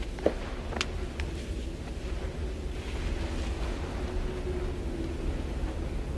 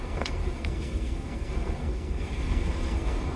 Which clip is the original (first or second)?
first